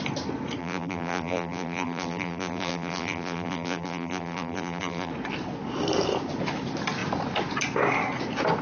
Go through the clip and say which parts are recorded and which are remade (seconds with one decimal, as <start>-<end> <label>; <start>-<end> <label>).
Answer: 0.0-0.6 recorded; 0.6-5.1 remade; 5.1-8.6 recorded